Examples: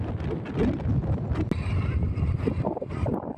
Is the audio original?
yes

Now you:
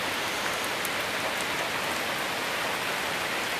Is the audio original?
yes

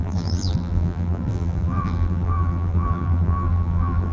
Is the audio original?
no